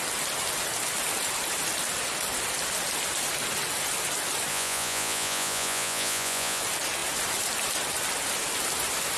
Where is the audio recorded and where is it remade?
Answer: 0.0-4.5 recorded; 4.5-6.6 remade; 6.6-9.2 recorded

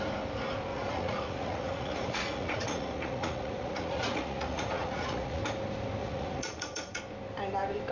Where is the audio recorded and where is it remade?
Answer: 0.0-0.7 recorded; 0.7-5.4 remade; 5.4-6.0 recorded; 6.0-7.0 remade; 7.0-7.9 recorded

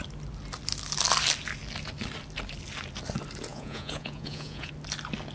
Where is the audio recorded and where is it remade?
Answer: 0.0-3.5 recorded; 3.5-4.7 remade; 4.7-5.3 recorded

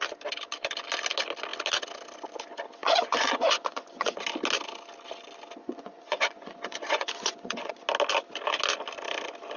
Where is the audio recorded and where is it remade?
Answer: 0.0-2.8 recorded; 2.8-4.1 remade; 4.1-5.6 recorded; 5.6-7.7 remade; 7.7-9.6 recorded